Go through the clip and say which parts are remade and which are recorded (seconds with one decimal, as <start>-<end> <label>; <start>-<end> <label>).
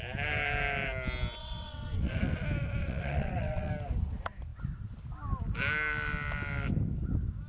0.0-1.4 recorded; 1.4-2.1 remade; 2.1-2.8 recorded; 2.8-3.7 remade; 3.7-7.5 recorded